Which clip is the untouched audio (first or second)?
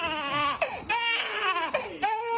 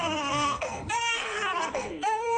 first